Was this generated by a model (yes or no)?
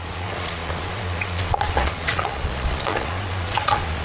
yes